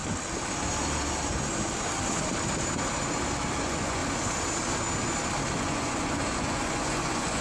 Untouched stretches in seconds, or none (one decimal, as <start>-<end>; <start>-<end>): 0.0-3.6; 4.0-5.6